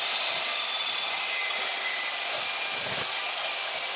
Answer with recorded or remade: recorded